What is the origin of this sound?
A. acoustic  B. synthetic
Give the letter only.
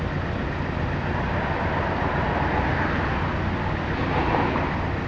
A